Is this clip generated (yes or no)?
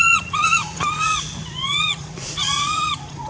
yes